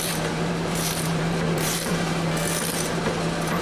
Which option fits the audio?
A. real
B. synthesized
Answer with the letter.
B